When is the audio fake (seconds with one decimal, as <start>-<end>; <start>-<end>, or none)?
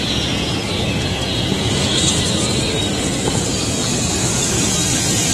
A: 0.0-2.1; 3.0-5.3